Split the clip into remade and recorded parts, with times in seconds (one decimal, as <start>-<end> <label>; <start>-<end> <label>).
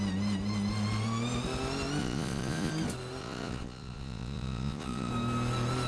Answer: 0.0-2.0 recorded; 2.0-2.7 remade; 2.7-3.2 recorded; 3.2-5.1 remade; 5.1-5.9 recorded